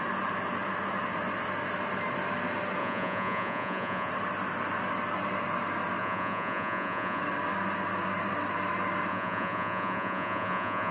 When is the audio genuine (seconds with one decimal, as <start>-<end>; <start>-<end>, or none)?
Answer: 0.0-2.8; 4.1-6.0; 7.2-9.1